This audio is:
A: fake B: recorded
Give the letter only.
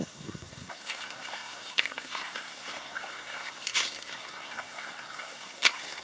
A